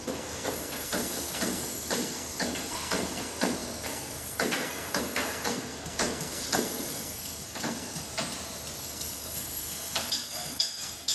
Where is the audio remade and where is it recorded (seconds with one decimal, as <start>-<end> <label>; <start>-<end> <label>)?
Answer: 0.0-8.1 remade; 8.1-8.8 recorded; 8.8-11.1 remade